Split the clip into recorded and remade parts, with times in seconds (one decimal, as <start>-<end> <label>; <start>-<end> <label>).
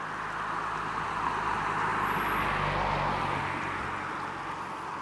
0.0-5.0 recorded